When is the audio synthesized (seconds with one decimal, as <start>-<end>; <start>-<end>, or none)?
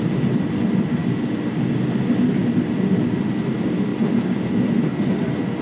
none